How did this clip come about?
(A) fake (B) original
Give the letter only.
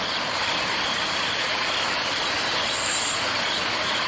B